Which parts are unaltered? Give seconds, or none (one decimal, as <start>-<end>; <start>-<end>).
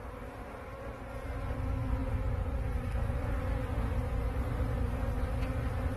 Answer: 0.0-6.0